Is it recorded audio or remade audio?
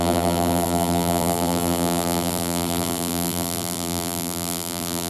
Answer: remade